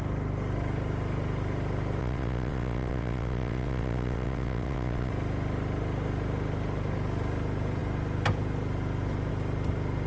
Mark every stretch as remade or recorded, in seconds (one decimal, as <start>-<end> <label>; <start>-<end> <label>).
0.0-2.0 recorded; 2.0-5.1 remade; 5.1-10.1 recorded